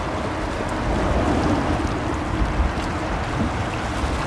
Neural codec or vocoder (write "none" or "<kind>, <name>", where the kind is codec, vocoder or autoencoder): none